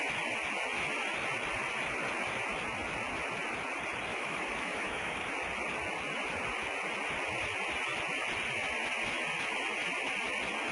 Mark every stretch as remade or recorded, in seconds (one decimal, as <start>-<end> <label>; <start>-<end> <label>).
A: 0.0-4.1 recorded; 4.1-5.3 remade; 5.3-10.7 recorded